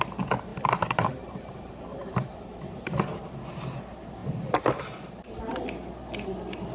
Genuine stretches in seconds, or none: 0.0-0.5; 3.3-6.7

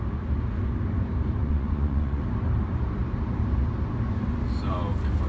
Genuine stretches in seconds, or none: 0.0-1.4; 2.2-5.3

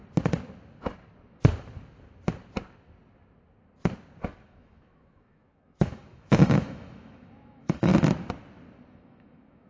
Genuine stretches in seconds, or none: 0.0-4.5; 7.9-8.9